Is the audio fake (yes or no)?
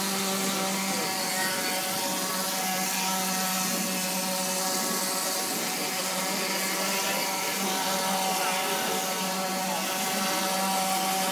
no